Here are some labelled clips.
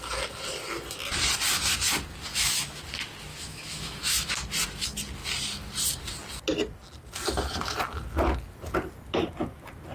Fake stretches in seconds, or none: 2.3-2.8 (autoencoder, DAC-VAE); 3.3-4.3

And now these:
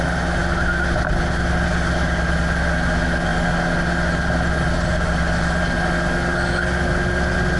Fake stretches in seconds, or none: none

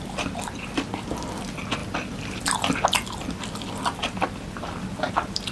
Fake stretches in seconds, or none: 1.8-5.1 (vocoder, BigVGAN v2)

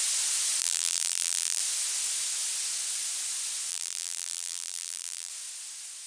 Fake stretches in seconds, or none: 0.6-1.6 (vocoder, BigVGAN v2); 3.7-5.3

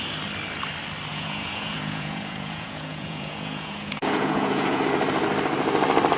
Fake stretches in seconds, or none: 1.1-4.8 (vocoder, Vocos)

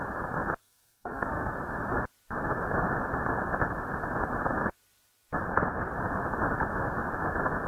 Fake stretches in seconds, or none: 0.6-1.5 (codec, SNAC)